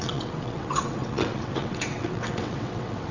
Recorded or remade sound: remade